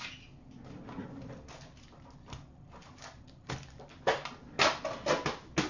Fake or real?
real